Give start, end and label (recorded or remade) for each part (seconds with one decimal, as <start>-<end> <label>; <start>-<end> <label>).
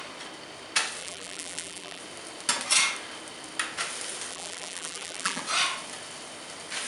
0.0-1.0 recorded; 1.0-2.0 remade; 2.0-4.3 recorded; 4.3-5.4 remade; 5.4-6.9 recorded